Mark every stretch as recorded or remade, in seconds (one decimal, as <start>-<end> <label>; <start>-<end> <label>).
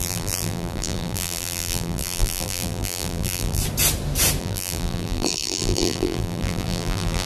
0.0-3.6 remade; 3.6-4.4 recorded; 4.4-7.3 remade